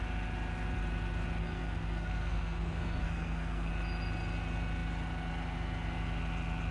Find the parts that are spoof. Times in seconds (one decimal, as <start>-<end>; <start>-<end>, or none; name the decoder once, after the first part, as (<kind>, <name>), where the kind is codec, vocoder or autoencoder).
1.4-3.7 (codec, SNAC)